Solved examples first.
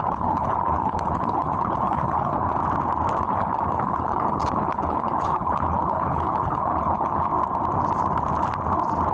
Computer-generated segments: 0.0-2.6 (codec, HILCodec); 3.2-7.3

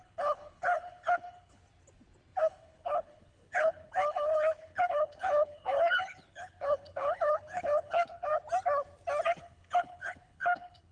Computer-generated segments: 0.0-1.6 (codec, HILCodec); 2.4-8.3; 9.3-10.9

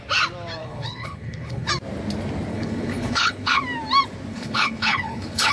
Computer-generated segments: 0.6-1.7 (codec, HILCodec); 2.5-3.6; 4.3-5.5

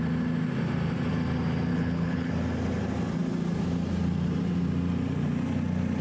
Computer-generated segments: 1.7-2.3 (codec, HILCodec)

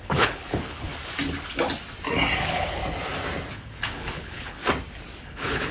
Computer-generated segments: 0.0-0.9 (codec, HILCodec); 2.4-2.8; 3.5-4.6; 5.2-5.7

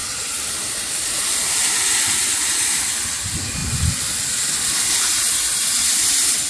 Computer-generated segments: none

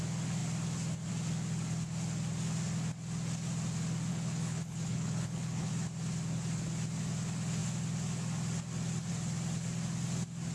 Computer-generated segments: 4.1-5.7 (codec, HILCodec)

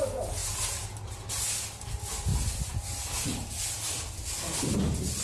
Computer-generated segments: none